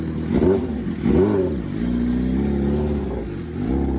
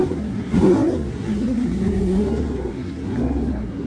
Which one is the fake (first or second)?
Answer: second